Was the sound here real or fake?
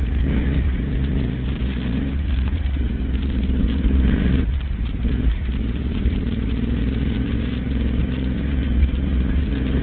fake